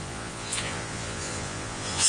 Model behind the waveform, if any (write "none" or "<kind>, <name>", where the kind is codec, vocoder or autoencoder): vocoder, Vocos